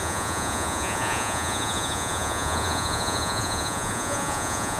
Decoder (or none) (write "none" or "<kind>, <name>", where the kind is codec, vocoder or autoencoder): vocoder, Vocos